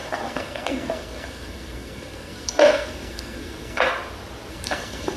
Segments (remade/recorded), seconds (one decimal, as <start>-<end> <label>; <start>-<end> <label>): 0.0-3.9 remade; 3.9-4.5 recorded; 4.5-5.2 remade